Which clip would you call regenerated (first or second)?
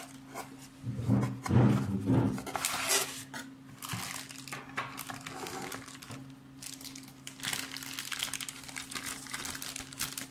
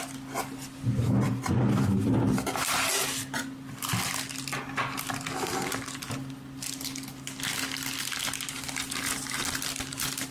second